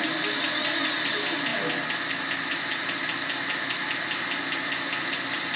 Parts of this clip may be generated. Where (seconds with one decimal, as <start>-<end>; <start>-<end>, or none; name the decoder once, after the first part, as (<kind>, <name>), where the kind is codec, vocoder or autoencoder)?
none